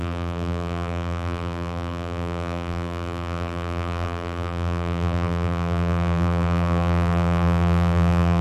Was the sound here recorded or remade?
remade